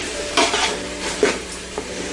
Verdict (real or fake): fake